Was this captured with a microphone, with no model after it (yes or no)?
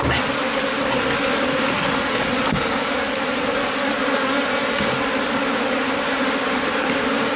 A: yes